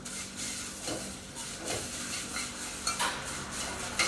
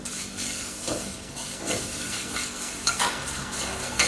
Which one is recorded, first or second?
first